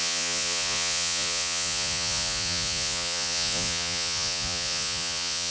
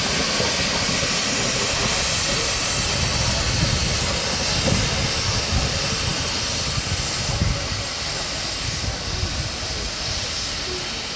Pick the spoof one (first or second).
first